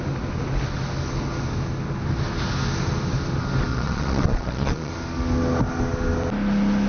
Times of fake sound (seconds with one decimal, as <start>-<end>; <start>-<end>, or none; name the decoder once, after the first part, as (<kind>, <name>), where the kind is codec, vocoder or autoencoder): 3.7-4.9 (vocoder, Vocos)